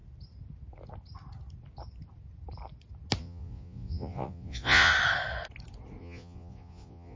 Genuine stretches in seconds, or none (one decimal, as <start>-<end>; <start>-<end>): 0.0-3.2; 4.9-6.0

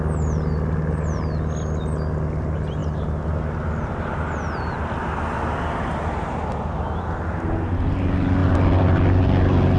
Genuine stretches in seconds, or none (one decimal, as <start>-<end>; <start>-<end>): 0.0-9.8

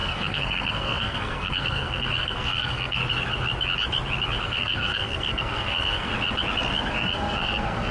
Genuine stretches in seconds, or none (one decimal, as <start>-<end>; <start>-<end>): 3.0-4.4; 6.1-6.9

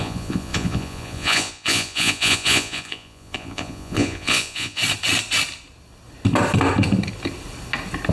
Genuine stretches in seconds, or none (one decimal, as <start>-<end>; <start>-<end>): 4.8-8.1

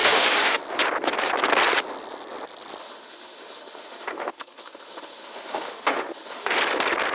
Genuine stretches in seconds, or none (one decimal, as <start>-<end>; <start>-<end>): 0.6-2.8; 6.6-7.1

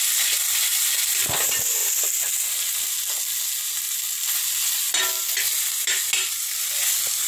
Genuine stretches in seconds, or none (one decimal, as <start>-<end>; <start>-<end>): 0.0-7.3

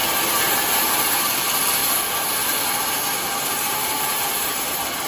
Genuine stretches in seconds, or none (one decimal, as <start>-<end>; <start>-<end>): 1.3-1.8